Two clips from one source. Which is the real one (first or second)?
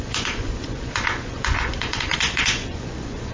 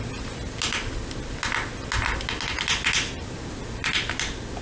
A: second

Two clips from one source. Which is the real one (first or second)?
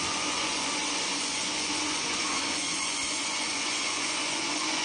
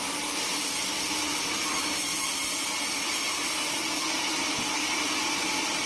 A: second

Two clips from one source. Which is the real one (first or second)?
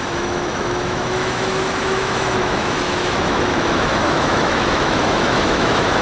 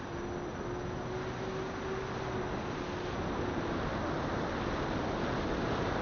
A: second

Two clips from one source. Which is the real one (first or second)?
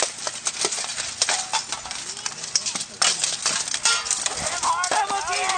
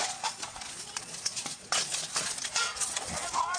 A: first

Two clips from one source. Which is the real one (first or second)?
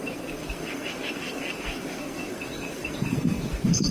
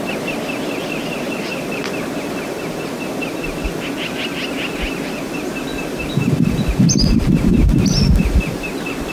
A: second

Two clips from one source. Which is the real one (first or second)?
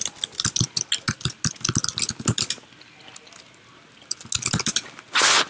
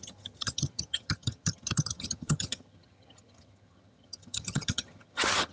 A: first